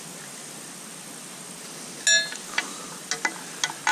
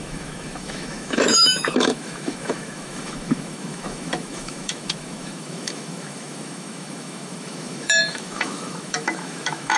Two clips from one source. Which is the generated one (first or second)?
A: second